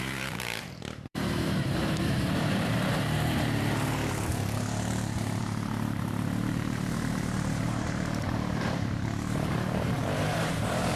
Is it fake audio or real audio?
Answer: fake